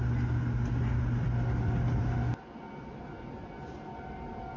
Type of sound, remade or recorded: recorded